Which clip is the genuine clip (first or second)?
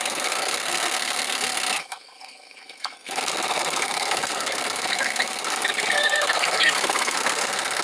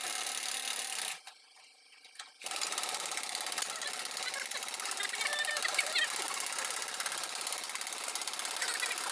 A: second